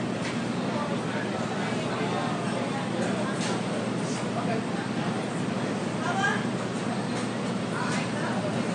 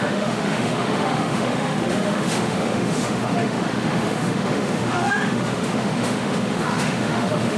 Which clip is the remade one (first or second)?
second